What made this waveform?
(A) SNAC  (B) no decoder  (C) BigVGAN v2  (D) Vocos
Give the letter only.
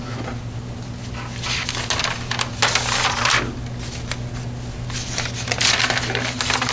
B